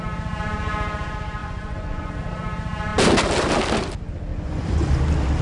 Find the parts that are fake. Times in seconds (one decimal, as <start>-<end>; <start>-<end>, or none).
1.4-2.1; 4.3-4.9